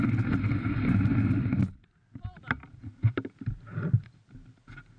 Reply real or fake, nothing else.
real